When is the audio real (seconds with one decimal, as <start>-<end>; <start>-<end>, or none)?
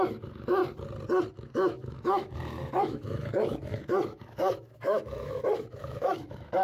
0.6-1.3